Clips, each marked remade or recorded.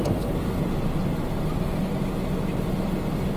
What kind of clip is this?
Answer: recorded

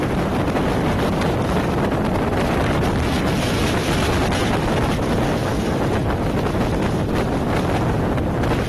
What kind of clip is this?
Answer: recorded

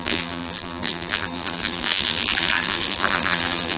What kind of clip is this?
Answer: remade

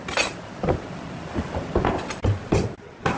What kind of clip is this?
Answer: recorded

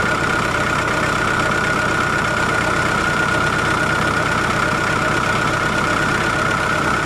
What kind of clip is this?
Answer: remade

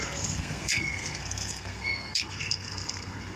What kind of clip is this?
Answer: remade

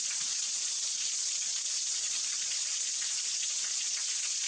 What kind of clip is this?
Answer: remade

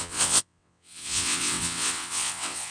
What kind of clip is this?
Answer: remade